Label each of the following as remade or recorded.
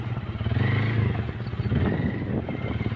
recorded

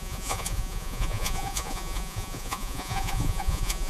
remade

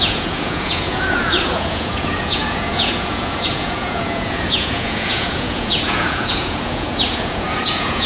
remade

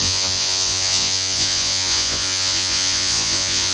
remade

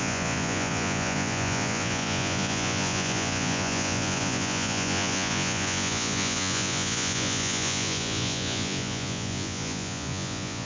remade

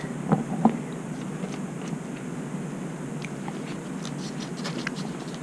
recorded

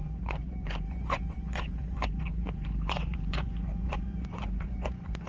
remade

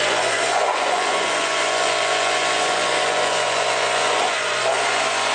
remade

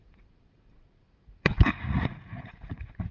remade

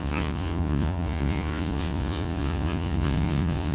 remade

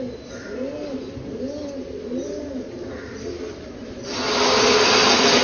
recorded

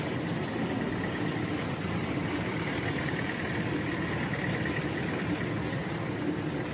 recorded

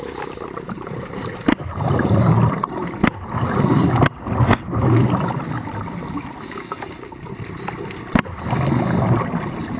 recorded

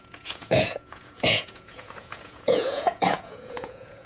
remade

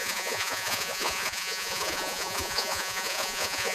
remade